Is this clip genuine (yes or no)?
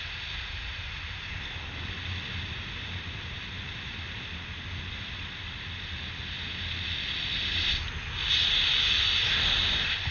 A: yes